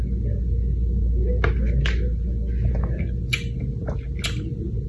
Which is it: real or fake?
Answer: real